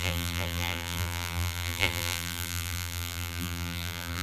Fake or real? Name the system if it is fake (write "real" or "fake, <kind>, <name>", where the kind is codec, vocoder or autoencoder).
fake, vocoder, BigVGAN v2